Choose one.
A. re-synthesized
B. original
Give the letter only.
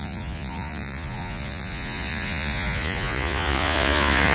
A